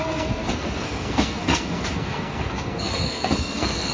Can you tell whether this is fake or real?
fake